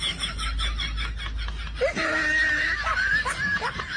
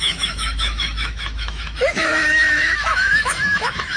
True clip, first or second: first